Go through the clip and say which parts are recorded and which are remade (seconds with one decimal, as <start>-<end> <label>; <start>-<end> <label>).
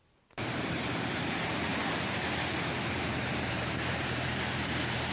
0.0-5.1 remade